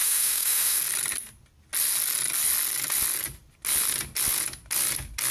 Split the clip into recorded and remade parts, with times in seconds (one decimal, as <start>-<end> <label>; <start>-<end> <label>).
0.0-0.8 remade; 0.8-5.3 recorded